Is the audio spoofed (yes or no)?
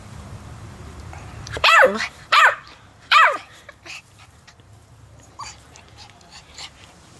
yes